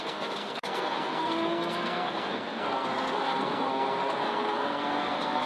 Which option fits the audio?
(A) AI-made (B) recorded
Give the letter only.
A